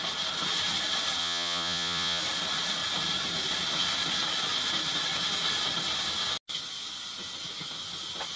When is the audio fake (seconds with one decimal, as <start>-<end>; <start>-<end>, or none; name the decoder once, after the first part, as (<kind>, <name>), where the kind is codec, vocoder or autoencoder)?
1.2-2.2 (vocoder, Vocos)